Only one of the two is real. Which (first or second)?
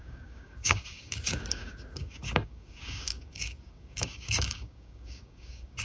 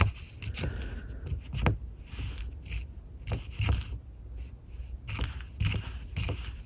second